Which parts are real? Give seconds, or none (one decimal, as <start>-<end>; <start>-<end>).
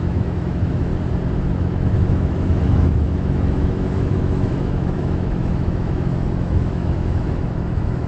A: 0.9-1.5